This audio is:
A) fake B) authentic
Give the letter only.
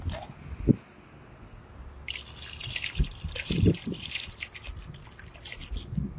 B